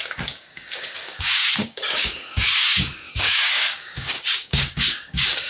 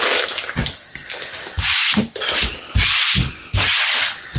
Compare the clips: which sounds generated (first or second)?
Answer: first